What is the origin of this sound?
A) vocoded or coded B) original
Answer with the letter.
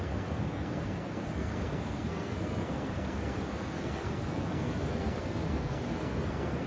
A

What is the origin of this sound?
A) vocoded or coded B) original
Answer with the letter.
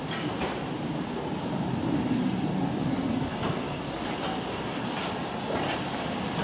B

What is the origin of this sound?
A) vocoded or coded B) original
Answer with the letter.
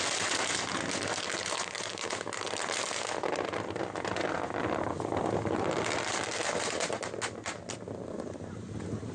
B